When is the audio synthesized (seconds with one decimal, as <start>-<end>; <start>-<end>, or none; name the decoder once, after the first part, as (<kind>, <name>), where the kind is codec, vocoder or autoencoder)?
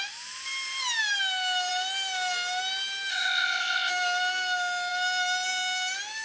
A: 3.1-3.9 (codec, ZipCodec)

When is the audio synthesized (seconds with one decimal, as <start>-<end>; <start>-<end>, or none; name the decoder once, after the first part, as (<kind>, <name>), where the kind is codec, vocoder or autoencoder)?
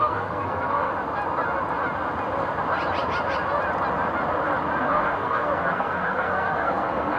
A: 0.0-0.9 (codec, SNAC); 4.8-7.2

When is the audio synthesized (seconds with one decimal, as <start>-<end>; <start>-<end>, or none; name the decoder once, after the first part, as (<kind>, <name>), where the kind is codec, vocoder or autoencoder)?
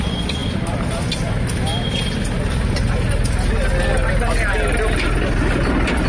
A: none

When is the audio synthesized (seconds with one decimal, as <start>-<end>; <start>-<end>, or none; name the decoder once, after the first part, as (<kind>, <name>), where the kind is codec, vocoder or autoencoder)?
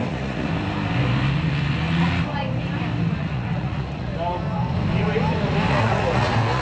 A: 0.0-0.5 (vocoder, Vocos); 3.2-4.1; 5.7-6.6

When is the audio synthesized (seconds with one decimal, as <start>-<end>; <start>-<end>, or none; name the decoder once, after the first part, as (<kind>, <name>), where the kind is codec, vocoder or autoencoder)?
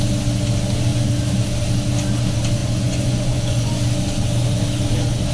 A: 2.6-3.7 (vocoder, Vocos)